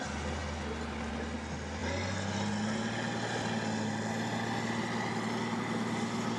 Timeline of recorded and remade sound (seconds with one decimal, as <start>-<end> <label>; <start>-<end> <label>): 0.0-6.4 recorded